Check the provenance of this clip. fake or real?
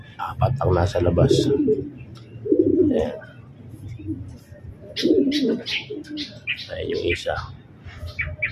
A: real